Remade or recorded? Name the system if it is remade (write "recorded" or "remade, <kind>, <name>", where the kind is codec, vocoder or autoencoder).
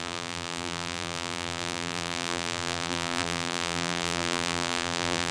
remade, vocoder, BigVGAN v2